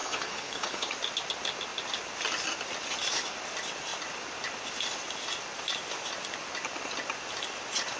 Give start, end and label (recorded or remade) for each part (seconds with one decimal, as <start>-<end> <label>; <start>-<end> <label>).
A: 0.0-0.9 remade; 0.9-8.0 recorded